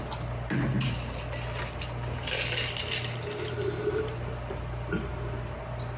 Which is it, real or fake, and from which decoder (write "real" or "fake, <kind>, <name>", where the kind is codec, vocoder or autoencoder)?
real